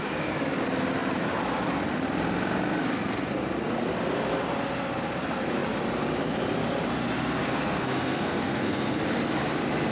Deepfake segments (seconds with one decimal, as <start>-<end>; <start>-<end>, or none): 7.4-9.0

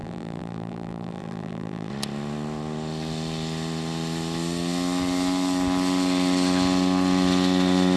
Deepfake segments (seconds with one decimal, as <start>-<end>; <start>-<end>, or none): 0.0-1.9

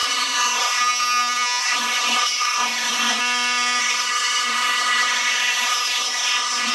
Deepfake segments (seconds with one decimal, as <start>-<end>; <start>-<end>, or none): 0.0-0.8; 1.6-3.2; 3.8-6.7